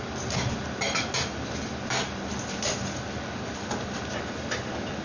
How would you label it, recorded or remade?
recorded